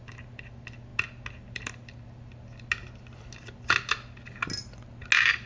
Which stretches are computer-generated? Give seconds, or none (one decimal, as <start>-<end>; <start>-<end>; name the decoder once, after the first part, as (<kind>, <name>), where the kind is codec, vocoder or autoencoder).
none